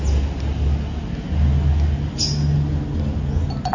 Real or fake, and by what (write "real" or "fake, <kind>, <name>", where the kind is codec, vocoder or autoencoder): real